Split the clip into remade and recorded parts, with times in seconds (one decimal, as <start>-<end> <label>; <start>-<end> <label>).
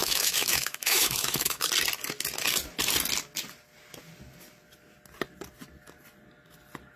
0.0-1.7 remade; 1.7-7.0 recorded